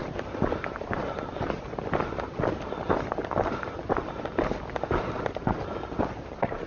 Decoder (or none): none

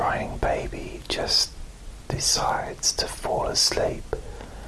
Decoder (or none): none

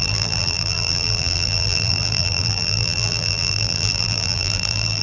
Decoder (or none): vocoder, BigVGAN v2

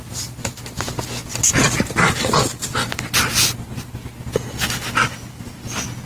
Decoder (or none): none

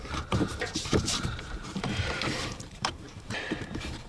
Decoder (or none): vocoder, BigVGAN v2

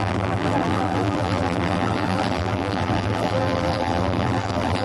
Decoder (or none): vocoder, BigVGAN v2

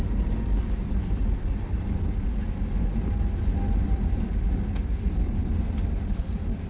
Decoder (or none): none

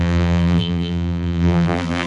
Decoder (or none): vocoder, BigVGAN v2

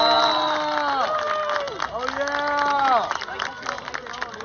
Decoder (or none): none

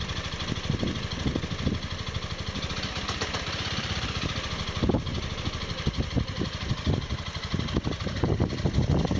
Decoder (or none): none